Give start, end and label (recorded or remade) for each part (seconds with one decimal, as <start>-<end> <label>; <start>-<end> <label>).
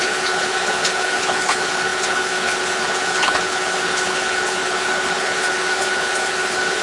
0.0-6.8 remade